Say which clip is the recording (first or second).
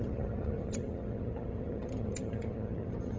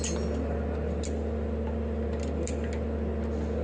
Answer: second